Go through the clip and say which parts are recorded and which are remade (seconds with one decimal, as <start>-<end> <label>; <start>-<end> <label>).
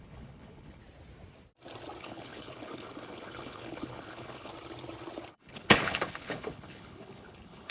0.0-0.8 remade; 0.8-2.0 recorded; 2.0-4.5 remade; 4.5-5.3 recorded; 5.3-7.7 remade